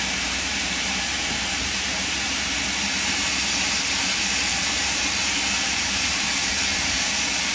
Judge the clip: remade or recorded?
remade